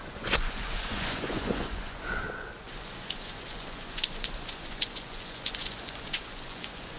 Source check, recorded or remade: remade